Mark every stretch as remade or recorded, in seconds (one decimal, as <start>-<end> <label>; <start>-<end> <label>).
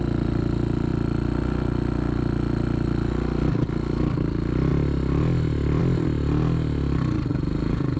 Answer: 0.0-7.3 recorded; 7.3-8.0 remade